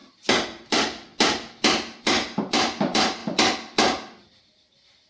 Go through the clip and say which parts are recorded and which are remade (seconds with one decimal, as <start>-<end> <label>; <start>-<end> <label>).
0.0-0.7 recorded; 0.7-1.1 remade; 1.1-2.0 recorded; 2.0-3.2 remade; 3.2-4.4 recorded; 4.4-5.1 remade